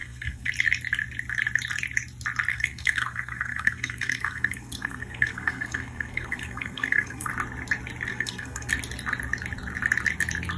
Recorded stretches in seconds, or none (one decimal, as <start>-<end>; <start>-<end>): 0.5-2.5; 7.3-8.1; 8.7-10.6